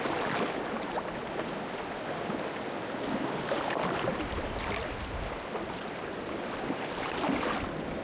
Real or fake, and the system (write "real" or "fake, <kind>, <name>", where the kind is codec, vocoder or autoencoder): real